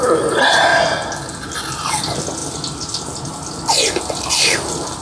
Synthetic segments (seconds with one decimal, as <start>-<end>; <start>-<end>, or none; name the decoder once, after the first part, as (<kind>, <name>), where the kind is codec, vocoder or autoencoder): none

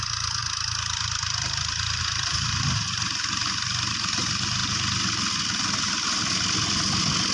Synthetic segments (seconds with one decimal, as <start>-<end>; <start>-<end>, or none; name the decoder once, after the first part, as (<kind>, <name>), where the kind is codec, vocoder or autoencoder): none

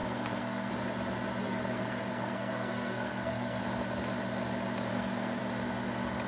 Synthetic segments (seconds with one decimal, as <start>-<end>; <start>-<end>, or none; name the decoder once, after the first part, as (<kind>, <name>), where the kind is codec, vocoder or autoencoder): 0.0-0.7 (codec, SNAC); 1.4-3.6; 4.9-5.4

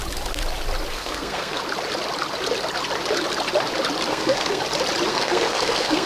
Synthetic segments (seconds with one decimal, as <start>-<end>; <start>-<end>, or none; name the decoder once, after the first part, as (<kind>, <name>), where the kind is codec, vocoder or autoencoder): 0.9-1.6 (codec, SNAC); 4.1-4.6; 5.1-6.1